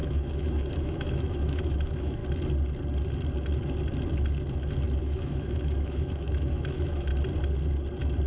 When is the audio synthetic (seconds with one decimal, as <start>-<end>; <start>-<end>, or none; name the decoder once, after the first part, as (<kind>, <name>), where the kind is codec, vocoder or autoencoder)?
0.0-2.2 (autoencoder, DAC-VAE); 5.0-7.1